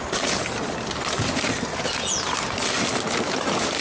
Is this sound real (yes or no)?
yes